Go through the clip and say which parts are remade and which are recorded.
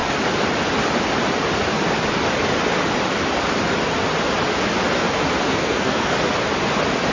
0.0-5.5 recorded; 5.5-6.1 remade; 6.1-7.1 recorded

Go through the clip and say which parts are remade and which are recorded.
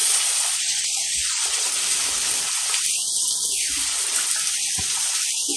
0.0-1.7 remade; 1.7-5.6 recorded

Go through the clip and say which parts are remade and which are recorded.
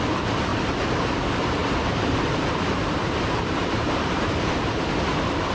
0.0-0.5 recorded; 0.5-1.1 remade; 1.1-1.6 recorded; 1.6-4.7 remade; 4.7-5.5 recorded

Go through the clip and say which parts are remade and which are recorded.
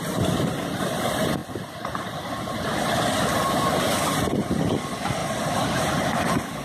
0.0-5.2 recorded; 5.2-5.8 remade; 5.8-6.6 recorded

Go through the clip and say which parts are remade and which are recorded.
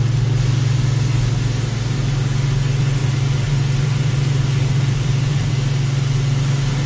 0.0-3.0 recorded; 3.0-5.5 remade; 5.5-6.9 recorded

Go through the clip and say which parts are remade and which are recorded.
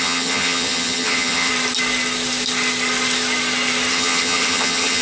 0.0-1.5 remade; 1.5-3.9 recorded; 3.9-5.0 remade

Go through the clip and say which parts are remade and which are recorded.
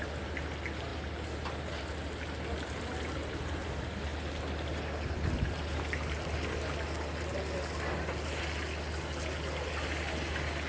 0.0-10.7 recorded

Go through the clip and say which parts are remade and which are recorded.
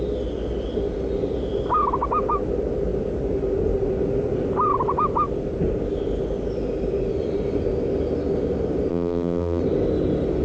0.0-8.9 recorded; 8.9-9.6 remade; 9.6-10.4 recorded